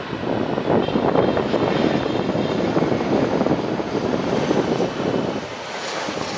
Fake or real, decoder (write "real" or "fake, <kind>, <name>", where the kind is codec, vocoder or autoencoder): real